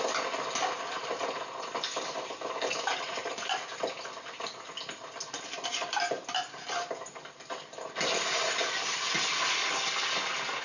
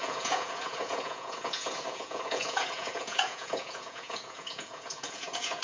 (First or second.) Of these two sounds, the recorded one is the first